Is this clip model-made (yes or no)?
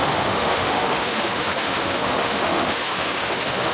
yes